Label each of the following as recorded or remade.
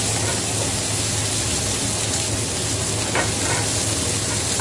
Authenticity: recorded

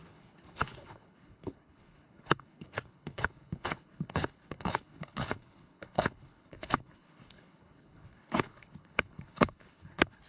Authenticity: remade